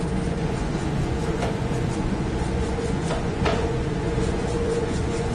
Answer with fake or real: fake